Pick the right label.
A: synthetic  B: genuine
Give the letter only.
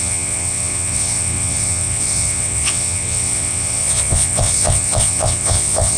A